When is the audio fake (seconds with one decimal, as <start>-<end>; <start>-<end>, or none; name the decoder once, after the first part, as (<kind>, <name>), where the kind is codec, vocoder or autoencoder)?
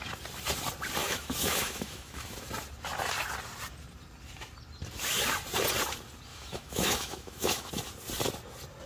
1.0-2.5 (autoencoder, DAC-VAE); 6.3-7.7